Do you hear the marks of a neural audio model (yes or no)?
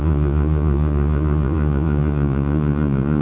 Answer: yes